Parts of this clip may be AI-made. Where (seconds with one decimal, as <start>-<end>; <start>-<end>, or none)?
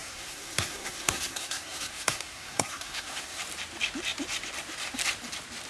0.0-3.4